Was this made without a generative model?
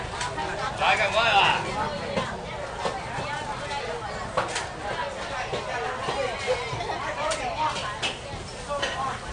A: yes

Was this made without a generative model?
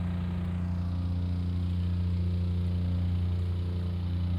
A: yes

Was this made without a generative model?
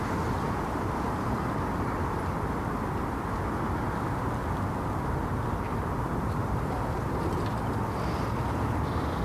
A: yes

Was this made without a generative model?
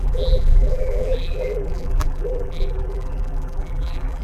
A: no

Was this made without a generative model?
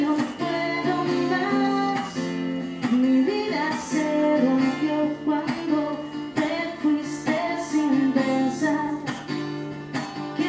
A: yes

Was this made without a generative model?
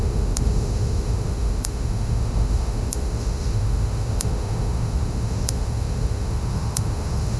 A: no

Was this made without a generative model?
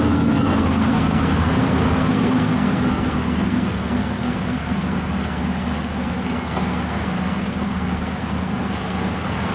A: no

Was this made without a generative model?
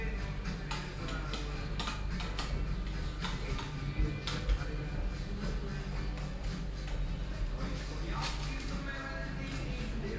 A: yes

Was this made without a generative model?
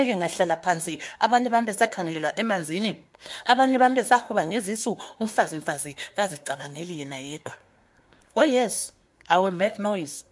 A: no